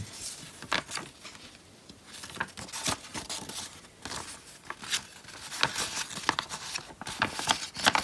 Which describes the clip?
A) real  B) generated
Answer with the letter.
A